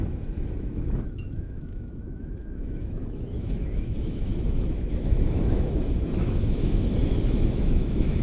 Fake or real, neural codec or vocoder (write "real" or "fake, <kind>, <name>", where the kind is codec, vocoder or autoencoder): fake, autoencoder, DAC-VAE